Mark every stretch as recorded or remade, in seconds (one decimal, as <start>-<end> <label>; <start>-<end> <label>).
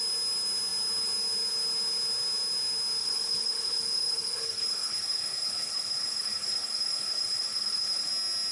0.0-3.0 recorded; 3.0-8.1 remade; 8.1-8.5 recorded